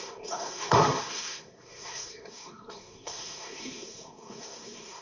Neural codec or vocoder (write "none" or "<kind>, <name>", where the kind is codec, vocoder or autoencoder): codec, SNAC